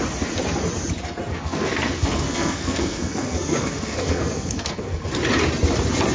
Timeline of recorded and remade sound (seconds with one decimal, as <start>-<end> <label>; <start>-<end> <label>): 0.0-1.3 recorded; 1.3-5.0 remade; 5.0-6.1 recorded